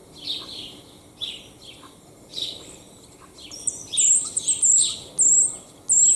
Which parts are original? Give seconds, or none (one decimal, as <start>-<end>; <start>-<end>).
0.0-2.3; 4.9-6.2